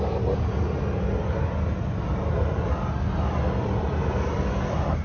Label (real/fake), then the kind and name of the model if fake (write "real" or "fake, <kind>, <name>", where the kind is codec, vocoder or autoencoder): real